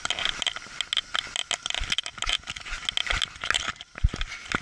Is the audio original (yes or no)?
yes